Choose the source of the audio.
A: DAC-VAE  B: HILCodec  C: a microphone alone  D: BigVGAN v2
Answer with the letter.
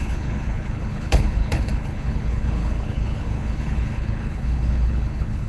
B